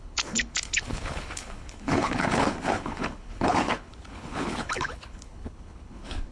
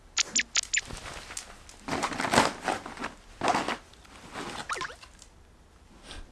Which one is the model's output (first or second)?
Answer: first